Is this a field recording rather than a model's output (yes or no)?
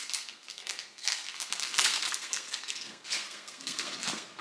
no